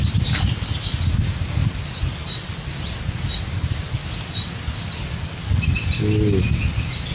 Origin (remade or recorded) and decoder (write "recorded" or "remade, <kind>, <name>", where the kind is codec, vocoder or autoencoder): recorded